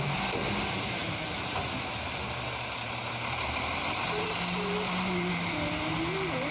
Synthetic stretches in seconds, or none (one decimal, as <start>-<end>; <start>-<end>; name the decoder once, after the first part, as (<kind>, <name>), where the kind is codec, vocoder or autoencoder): 0.0-6.5 (vocoder, BigVGAN v2)